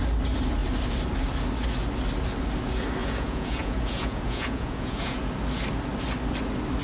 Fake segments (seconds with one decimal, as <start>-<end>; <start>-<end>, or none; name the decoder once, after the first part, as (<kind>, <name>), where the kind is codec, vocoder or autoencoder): 3.0-5.2 (vocoder, Vocos)